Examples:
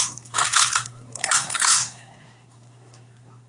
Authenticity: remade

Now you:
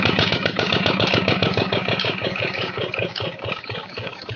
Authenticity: remade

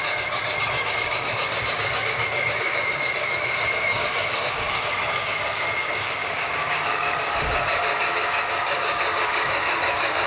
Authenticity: remade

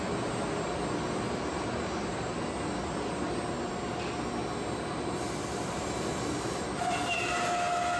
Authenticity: recorded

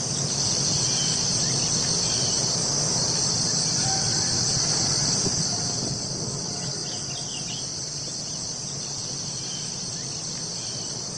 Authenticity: recorded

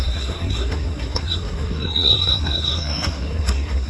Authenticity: remade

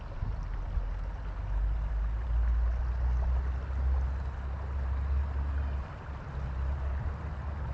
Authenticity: recorded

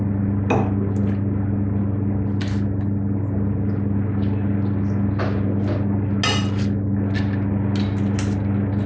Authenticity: recorded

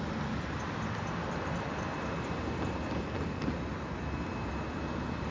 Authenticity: recorded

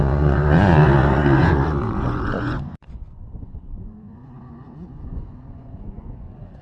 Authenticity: remade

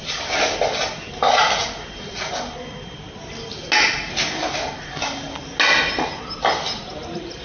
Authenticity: recorded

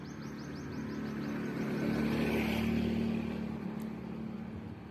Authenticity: recorded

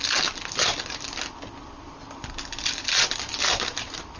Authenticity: recorded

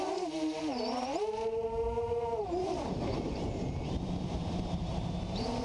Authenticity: remade